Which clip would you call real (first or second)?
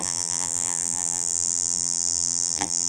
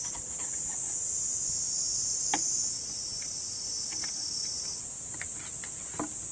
second